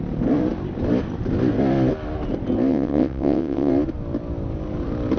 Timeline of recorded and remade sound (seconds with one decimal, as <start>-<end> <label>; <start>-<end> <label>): 0.0-2.7 recorded; 2.7-3.7 remade; 3.7-5.2 recorded